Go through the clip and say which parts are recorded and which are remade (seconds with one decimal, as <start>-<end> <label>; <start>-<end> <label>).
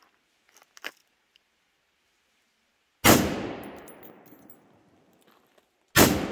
0.0-6.3 recorded